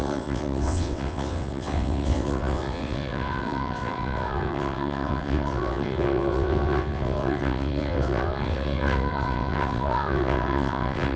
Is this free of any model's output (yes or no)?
no